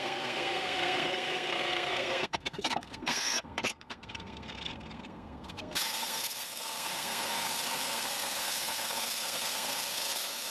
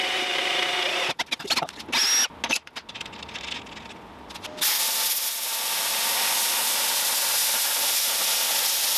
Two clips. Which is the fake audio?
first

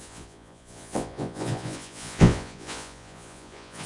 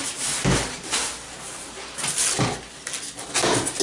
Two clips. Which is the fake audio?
first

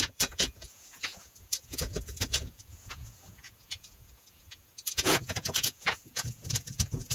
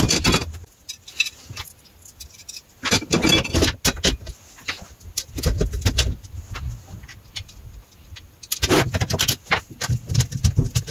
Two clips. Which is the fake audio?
first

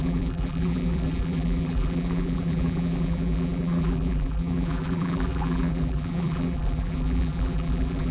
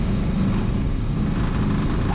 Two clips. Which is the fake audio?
first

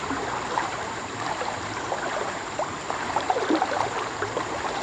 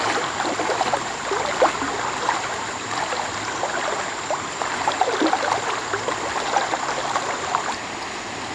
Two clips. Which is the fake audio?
first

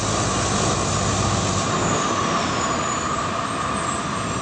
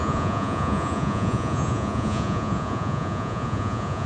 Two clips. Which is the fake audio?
second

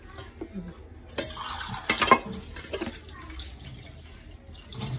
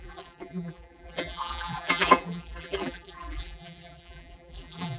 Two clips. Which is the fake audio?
second